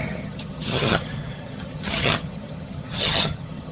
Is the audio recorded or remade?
remade